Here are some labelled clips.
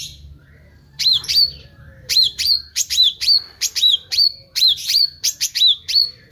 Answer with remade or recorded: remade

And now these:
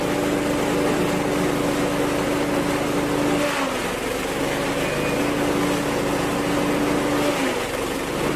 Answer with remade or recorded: recorded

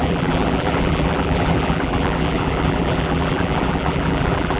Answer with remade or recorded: remade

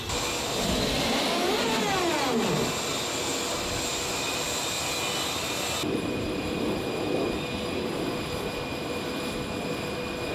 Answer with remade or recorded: recorded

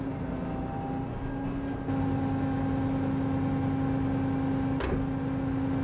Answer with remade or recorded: recorded